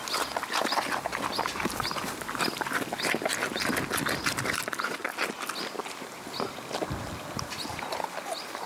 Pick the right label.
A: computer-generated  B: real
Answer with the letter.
B